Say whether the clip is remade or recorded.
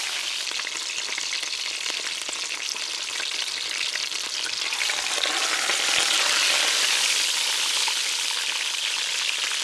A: recorded